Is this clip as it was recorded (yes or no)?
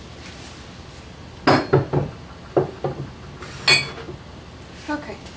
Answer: yes